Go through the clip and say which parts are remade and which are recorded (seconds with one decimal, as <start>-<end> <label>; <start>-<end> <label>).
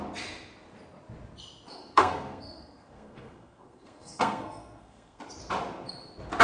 0.0-1.8 recorded; 1.8-5.2 remade; 5.2-6.4 recorded